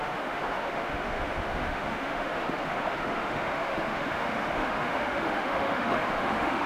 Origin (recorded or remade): remade